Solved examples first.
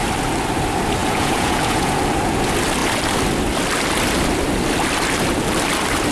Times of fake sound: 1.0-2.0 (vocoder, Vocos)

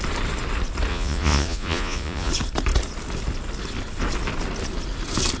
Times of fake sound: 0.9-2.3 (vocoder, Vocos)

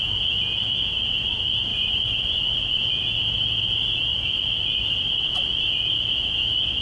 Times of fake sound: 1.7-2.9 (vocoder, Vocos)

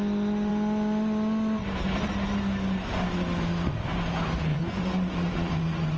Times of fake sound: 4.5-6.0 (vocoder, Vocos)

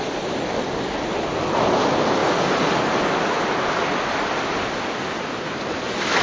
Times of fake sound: none

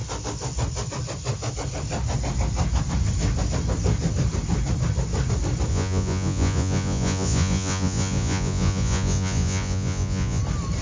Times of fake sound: 5.7-10.4 (vocoder, Vocos)